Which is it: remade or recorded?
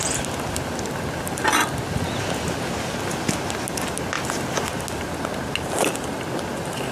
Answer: recorded